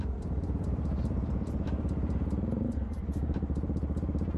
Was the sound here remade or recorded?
remade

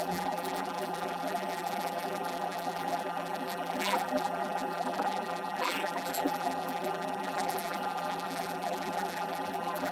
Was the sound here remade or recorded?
remade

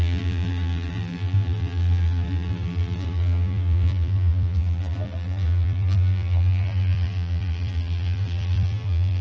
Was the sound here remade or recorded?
remade